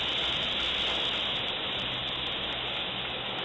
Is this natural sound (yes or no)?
yes